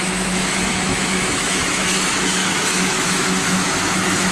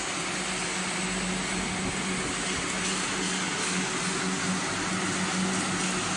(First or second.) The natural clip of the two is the second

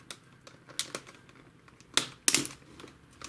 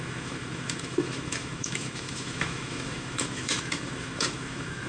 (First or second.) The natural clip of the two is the first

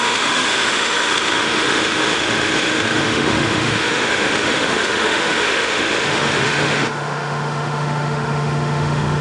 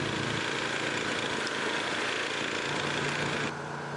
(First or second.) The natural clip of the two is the second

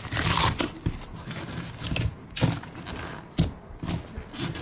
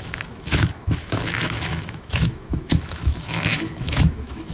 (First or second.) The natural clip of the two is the first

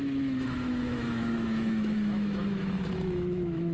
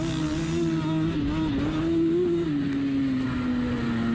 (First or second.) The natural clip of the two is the second